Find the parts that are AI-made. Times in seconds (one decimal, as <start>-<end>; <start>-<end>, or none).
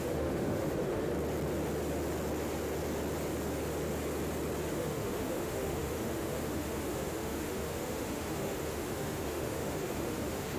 0.0-1.1; 4.7-10.6